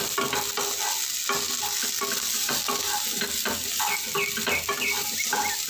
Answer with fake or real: real